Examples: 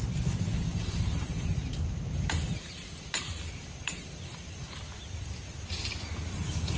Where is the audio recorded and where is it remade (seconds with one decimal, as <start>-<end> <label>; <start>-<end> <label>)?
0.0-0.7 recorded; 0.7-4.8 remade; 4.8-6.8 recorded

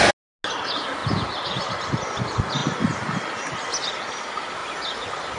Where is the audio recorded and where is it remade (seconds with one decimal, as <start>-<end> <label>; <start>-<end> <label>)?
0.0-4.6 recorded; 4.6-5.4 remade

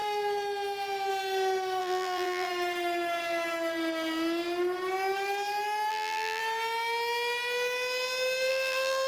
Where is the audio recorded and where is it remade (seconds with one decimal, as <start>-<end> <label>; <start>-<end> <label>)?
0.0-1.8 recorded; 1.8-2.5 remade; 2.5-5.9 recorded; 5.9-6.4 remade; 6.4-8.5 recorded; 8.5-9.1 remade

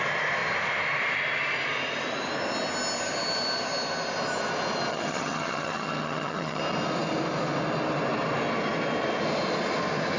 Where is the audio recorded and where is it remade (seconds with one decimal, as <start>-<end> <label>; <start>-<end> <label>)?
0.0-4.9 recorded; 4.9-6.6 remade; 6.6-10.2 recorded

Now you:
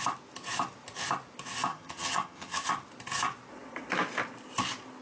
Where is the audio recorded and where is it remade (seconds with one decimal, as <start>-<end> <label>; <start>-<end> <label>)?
0.0-1.7 recorded; 1.7-2.7 remade; 2.7-5.0 recorded

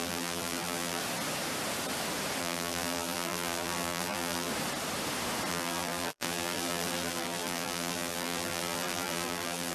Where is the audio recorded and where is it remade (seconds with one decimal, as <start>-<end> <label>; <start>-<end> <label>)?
0.0-1.0 remade; 1.0-2.4 recorded; 2.4-4.5 remade; 4.5-5.5 recorded; 5.5-9.7 remade

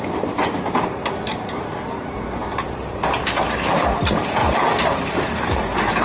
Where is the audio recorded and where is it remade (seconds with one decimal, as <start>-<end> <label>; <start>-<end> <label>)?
0.0-1.3 recorded; 1.3-3.2 remade; 3.2-4.4 recorded; 4.4-5.4 remade; 5.4-6.0 recorded

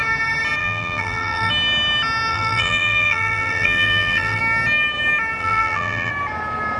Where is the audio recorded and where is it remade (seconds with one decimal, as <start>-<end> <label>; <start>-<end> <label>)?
0.0-0.6 recorded; 0.6-1.5 remade; 1.5-2.3 recorded; 2.3-4.4 remade; 4.4-5.4 recorded; 5.4-6.1 remade; 6.1-6.8 recorded